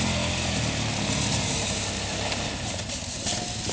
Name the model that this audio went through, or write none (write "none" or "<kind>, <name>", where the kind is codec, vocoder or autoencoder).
none